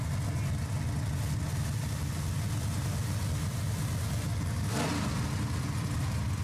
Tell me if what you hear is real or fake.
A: real